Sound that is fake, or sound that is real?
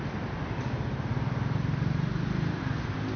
real